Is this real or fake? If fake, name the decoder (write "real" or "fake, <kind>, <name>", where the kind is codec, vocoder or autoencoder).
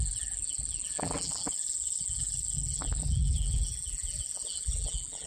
fake, vocoder, BigVGAN v2